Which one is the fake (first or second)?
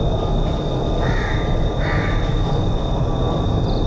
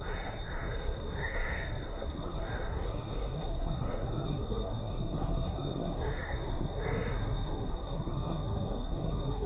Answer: second